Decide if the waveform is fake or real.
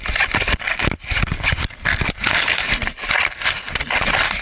real